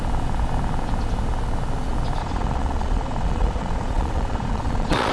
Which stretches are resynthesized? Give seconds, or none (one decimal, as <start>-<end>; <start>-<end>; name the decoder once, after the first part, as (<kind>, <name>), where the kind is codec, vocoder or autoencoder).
2.2-5.1 (vocoder, Vocos)